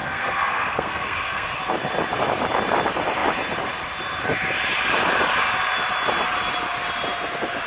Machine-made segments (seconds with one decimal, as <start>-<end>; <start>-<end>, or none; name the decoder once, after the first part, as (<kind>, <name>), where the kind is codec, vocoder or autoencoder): 0.0-1.5 (codec, SNAC)